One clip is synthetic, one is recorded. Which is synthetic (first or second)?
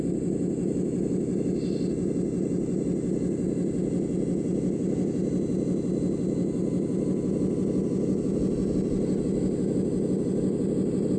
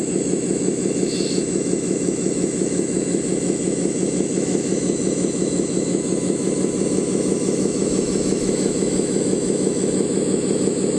second